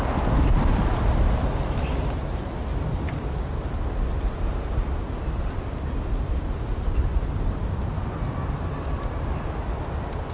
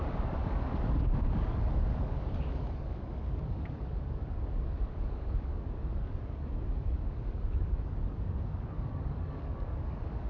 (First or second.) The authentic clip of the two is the first